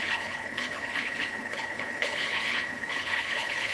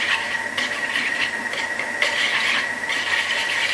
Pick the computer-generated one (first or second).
first